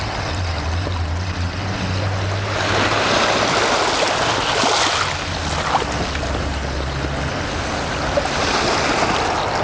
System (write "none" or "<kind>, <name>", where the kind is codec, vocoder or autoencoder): none